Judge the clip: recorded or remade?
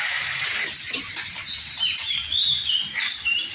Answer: remade